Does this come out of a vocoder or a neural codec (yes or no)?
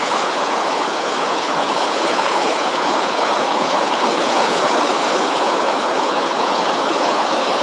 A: yes